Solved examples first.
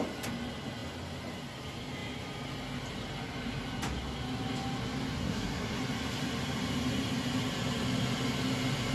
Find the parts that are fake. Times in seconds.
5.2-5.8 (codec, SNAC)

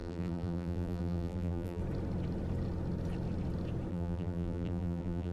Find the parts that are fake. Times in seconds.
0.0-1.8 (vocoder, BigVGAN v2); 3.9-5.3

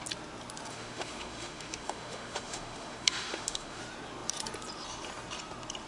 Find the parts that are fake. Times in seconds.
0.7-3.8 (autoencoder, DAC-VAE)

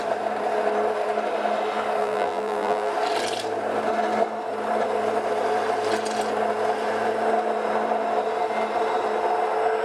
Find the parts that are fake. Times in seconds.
2.0-2.9 (vocoder, BigVGAN v2)

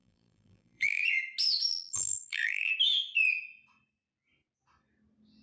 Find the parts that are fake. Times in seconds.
0.0-1.0 (vocoder, BigVGAN v2); 1.7-2.7

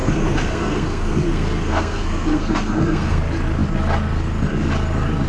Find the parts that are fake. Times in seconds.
0.0-3.2 (codec, SNAC)